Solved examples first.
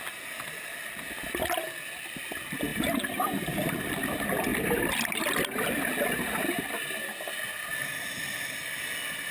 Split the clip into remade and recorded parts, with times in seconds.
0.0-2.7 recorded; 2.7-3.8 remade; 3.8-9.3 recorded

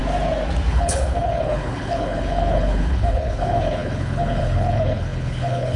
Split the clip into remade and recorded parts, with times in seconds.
0.0-0.7 recorded; 0.7-5.8 remade

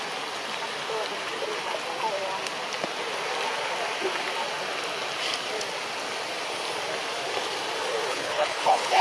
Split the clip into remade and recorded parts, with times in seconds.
0.0-8.1 recorded; 8.1-9.0 remade

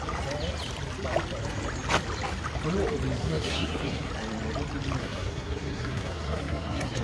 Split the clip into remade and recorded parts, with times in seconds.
0.0-3.2 recorded; 3.2-4.1 remade; 4.1-5.0 recorded; 5.0-7.0 remade

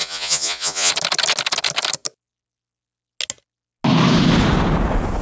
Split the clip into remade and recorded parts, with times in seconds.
0.0-0.9 remade; 0.9-5.2 recorded

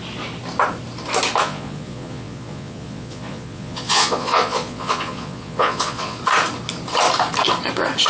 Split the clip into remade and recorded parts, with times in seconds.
0.0-1.4 recorded; 1.4-6.2 remade; 6.2-8.1 recorded

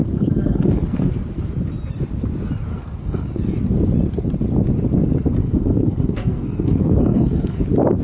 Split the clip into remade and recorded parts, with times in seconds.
0.0-1.1 remade; 1.1-2.7 recorded; 2.7-3.4 remade; 3.4-5.4 recorded; 5.4-7.6 remade; 7.6-8.0 recorded

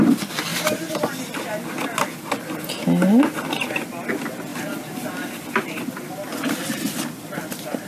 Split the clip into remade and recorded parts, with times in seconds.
0.0-0.5 remade; 0.5-4.1 recorded; 4.1-4.5 remade; 4.5-5.3 recorded; 5.3-7.9 remade